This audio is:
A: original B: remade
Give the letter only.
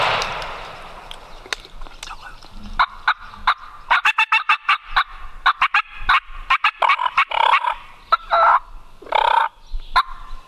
A